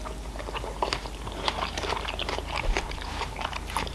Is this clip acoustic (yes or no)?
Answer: no